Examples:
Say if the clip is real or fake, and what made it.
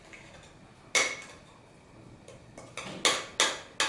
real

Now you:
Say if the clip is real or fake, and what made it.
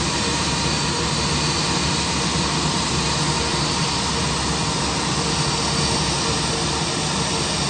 real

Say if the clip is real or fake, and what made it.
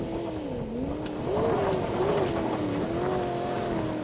real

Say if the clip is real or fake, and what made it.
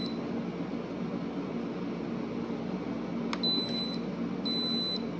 real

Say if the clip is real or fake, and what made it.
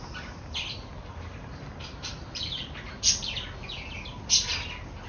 real